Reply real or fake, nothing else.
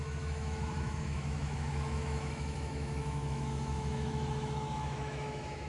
fake